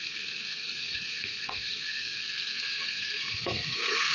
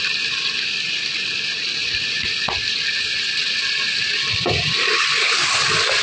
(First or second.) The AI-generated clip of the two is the first